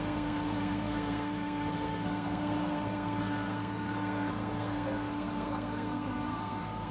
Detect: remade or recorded remade